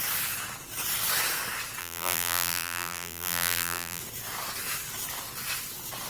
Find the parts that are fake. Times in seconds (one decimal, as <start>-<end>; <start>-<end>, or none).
1.8-4.0